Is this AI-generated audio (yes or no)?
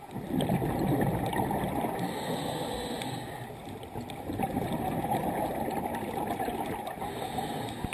no